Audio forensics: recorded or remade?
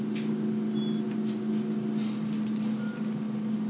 recorded